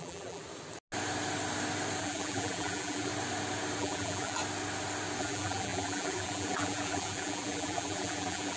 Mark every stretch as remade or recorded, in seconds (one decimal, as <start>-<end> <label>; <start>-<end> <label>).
0.0-0.4 remade; 0.4-2.0 recorded; 2.0-3.1 remade; 3.1-3.8 recorded; 3.8-4.4 remade; 4.4-5.2 recorded; 5.2-8.6 remade